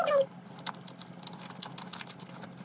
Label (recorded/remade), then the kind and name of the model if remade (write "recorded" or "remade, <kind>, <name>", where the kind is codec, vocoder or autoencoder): recorded